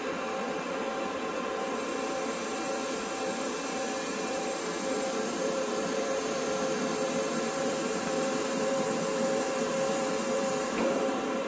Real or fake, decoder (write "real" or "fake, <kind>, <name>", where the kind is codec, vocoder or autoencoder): fake, vocoder, BigVGAN v2